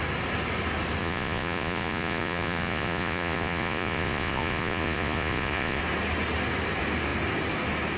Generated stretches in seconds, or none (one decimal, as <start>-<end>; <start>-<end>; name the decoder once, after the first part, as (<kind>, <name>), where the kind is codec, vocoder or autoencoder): 1.0-5.8 (vocoder, Vocos)